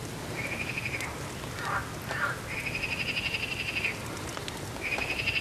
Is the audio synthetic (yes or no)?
no